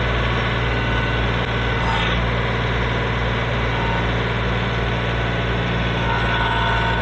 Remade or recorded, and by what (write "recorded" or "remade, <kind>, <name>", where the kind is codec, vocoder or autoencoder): recorded